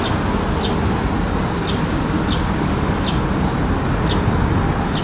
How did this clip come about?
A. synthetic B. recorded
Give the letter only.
B